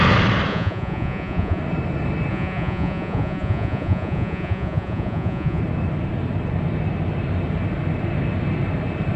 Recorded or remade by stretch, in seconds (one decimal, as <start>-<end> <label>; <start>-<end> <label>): 0.0-0.5 recorded; 0.5-1.6 remade; 1.6-2.3 recorded; 2.3-5.6 remade; 5.6-9.2 recorded